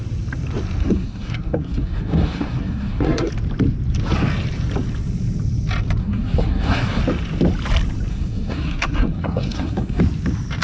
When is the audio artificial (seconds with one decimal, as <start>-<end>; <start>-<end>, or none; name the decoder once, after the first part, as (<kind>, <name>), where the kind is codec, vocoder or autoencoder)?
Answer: 0.8-3.3 (codec, SNAC); 6.0-7.0; 8.1-10.0